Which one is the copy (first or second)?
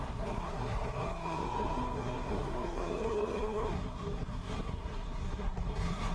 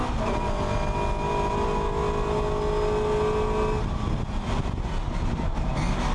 first